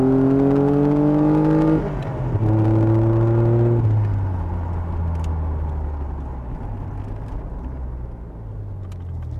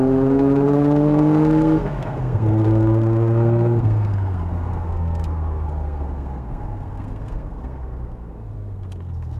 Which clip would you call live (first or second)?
first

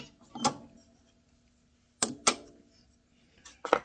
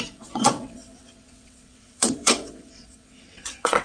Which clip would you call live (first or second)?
first